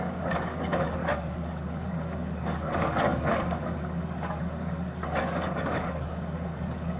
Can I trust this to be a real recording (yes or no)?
no